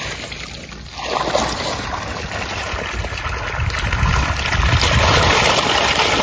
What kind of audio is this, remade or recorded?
recorded